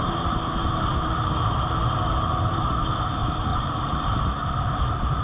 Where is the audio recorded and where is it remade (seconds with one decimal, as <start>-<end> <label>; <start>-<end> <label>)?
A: 0.0-0.6 recorded; 0.6-2.1 remade; 2.1-3.5 recorded; 3.5-4.2 remade; 4.2-5.2 recorded